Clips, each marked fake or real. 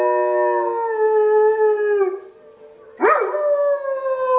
real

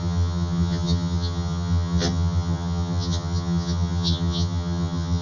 fake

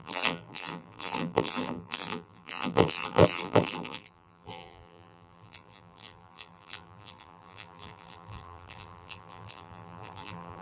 fake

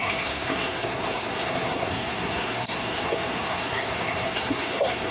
fake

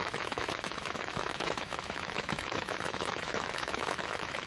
fake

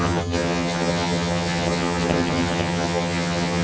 fake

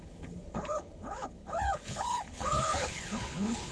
fake